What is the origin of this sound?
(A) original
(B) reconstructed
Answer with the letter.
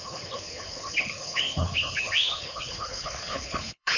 B